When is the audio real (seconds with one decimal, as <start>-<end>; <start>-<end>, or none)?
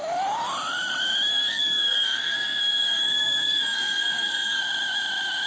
0.0-1.3; 4.6-5.5